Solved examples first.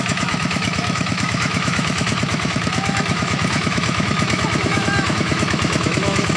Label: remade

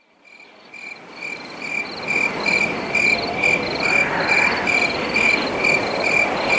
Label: recorded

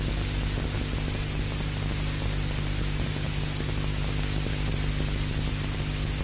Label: recorded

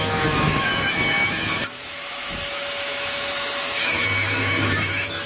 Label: remade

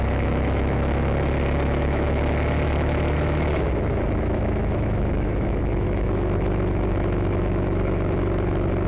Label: remade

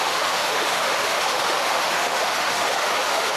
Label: remade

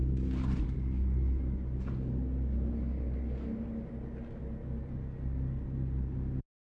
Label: recorded